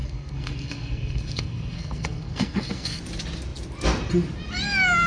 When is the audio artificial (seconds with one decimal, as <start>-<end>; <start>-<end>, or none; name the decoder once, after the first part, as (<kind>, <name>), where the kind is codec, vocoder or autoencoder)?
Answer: 0.0-3.0 (codec, SNAC)